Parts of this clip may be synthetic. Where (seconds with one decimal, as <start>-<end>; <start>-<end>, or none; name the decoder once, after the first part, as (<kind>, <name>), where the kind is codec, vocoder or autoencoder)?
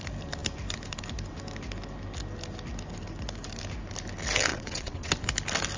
4.5-5.1 (vocoder, WaveNeXt)